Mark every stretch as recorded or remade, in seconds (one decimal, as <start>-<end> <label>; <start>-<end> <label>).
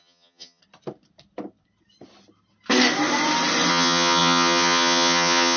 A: 0.0-0.6 remade; 0.6-3.7 recorded; 3.7-5.6 remade